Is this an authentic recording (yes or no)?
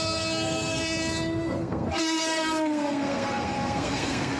no